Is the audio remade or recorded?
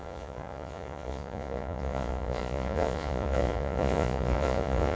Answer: remade